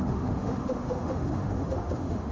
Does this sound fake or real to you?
fake